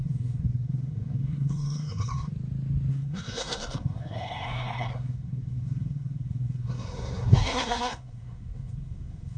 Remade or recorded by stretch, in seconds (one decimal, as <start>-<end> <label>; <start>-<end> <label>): 0.0-2.3 remade; 2.3-2.9 recorded; 2.9-9.4 remade